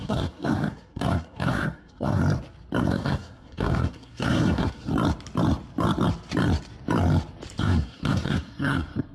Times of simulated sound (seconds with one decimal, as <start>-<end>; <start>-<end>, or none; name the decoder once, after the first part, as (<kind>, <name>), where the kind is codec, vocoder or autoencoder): 0.0-2.2 (codec, SNAC); 2.8-4.9; 7.6-9.1